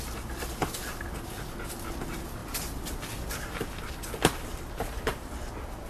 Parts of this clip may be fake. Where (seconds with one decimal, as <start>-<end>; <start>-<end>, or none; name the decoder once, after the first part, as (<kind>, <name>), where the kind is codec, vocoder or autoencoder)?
2.4-5.3 (vocoder, BigVGAN v2)